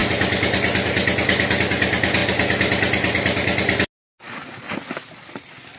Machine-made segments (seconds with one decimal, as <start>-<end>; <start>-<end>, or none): none